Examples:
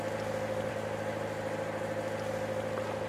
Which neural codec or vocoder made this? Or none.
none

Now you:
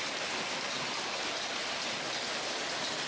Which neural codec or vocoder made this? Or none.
none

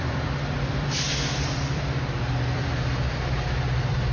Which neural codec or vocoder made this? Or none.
vocoder, BigVGAN v2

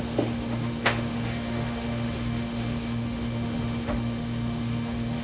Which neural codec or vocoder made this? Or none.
autoencoder, DAC-VAE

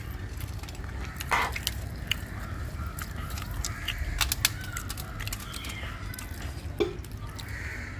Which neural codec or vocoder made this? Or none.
none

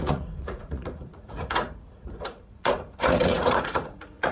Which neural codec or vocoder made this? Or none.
vocoder, Vocos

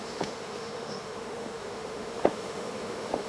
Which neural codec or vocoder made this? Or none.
autoencoder, DAC-VAE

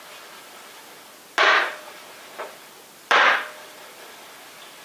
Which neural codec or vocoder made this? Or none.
none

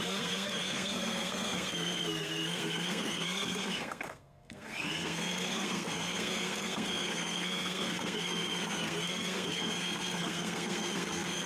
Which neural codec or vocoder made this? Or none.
codec, SNAC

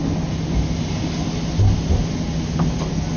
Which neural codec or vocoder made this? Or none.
none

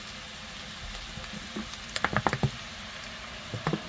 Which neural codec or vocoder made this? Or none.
none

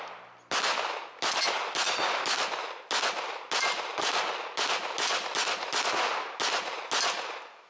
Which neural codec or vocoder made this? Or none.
none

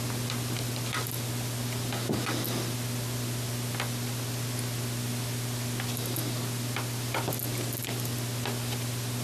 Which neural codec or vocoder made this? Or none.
none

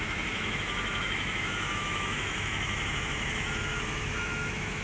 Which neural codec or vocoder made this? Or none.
autoencoder, DAC-VAE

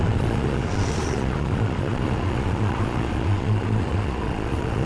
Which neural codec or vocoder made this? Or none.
vocoder, Vocos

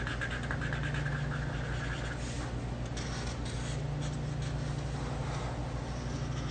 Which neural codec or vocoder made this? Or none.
none